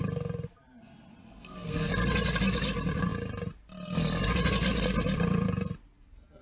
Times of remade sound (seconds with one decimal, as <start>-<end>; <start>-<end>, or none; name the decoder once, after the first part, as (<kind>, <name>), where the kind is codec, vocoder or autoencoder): 1.2-1.9 (codec, SNAC)